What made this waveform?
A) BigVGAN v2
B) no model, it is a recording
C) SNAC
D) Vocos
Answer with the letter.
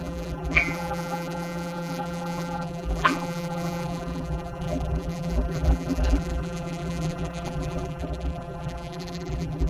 A